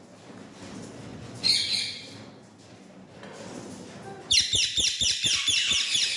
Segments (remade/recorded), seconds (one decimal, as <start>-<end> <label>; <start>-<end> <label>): 0.0-1.1 recorded; 1.1-1.8 remade; 1.8-6.2 recorded